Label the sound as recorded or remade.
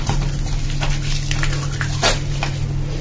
recorded